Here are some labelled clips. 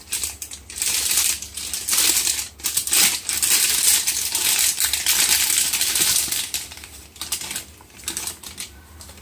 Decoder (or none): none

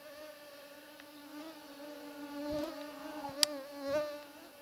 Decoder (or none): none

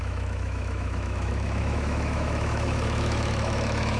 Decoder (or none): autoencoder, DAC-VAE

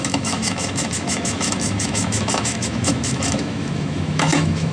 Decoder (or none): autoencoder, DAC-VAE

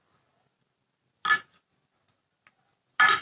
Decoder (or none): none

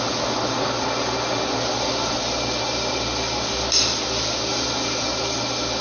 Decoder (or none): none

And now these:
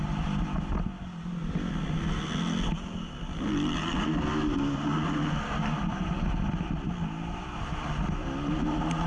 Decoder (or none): none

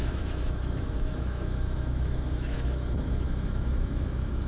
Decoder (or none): autoencoder, DAC-VAE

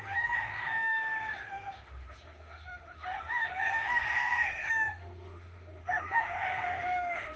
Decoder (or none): autoencoder, DAC-VAE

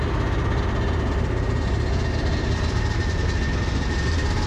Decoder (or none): none